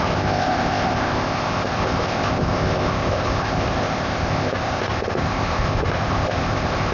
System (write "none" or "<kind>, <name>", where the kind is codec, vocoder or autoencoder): codec, ZipCodec